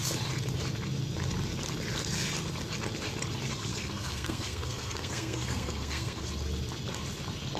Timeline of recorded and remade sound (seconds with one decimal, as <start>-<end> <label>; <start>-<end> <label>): 0.0-3.7 recorded; 3.7-6.3 remade; 6.3-7.6 recorded